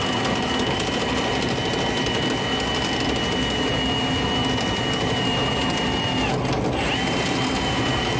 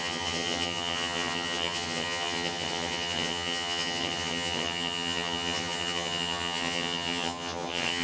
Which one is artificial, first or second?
second